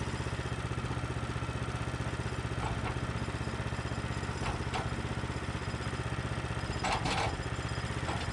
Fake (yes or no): no